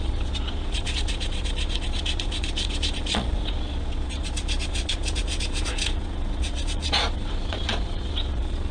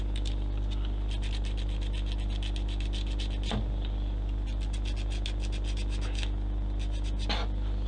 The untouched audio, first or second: second